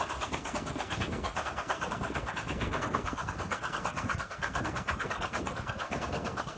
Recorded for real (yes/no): no